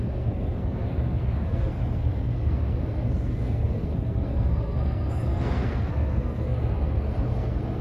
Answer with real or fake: fake